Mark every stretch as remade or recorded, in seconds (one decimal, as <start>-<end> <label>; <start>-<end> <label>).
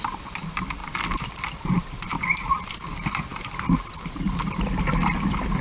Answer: 0.0-0.8 remade; 0.8-2.7 recorded; 2.7-3.3 remade; 3.3-4.0 recorded; 4.0-4.4 remade; 4.4-5.6 recorded